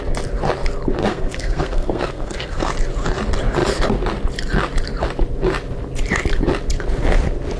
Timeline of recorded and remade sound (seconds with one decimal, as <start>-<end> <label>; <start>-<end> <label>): 0.0-1.0 recorded; 1.0-2.7 remade; 2.7-7.6 recorded